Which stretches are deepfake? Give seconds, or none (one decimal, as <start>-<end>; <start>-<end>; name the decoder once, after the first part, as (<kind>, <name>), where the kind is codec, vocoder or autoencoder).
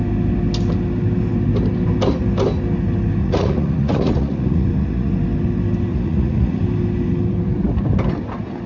3.2-5.1 (vocoder, Vocos); 5.9-6.6